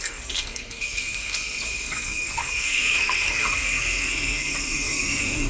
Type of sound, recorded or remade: remade